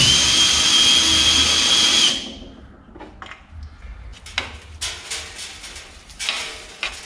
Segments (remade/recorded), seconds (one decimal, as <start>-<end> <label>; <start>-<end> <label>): 0.0-7.0 recorded